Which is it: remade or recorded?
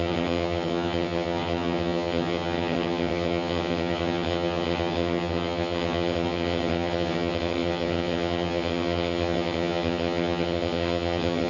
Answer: remade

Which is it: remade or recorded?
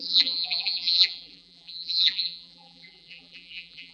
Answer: remade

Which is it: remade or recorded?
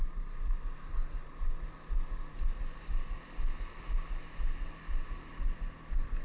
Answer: recorded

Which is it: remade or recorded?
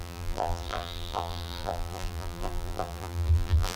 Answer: remade